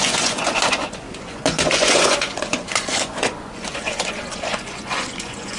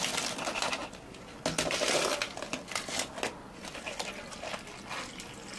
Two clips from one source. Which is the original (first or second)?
second